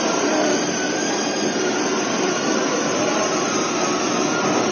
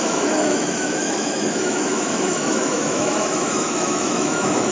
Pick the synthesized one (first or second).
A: second